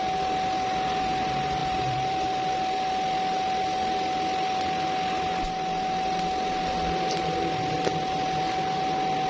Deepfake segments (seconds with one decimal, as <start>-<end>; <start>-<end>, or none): 1.6-2.5